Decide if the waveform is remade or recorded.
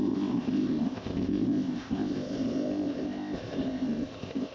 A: remade